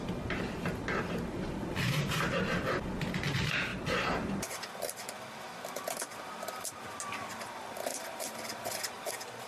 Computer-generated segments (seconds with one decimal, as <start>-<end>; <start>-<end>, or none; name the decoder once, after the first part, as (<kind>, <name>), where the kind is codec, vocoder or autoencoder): 3.7-4.9 (vocoder, BigVGAN v2)